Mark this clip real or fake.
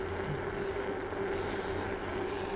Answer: real